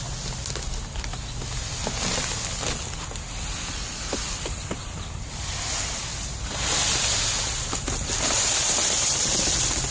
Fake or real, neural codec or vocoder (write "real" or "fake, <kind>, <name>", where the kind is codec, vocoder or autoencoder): real